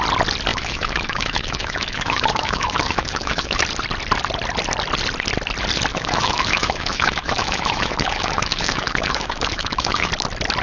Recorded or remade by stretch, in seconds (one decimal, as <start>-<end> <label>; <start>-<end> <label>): 0.0-0.5 recorded; 0.5-3.6 remade; 3.6-5.9 recorded; 5.9-10.1 remade; 10.1-10.6 recorded